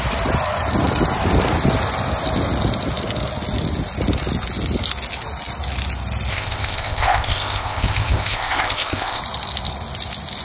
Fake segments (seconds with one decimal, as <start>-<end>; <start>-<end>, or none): 6.3-9.2